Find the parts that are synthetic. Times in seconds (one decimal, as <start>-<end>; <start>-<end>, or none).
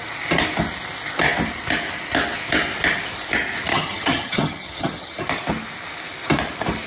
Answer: 3.7-5.2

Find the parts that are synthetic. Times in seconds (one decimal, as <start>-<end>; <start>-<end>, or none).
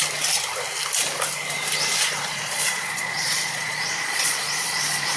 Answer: 2.4-5.2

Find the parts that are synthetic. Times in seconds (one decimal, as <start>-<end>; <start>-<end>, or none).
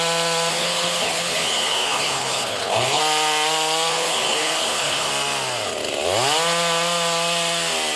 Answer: 0.5-3.0; 3.9-5.1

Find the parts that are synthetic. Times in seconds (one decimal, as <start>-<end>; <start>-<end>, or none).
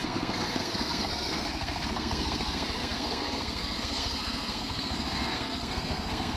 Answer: 0.0-6.4